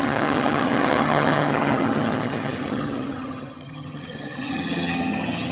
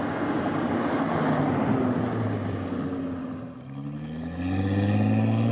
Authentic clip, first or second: second